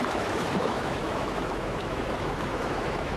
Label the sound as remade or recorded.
remade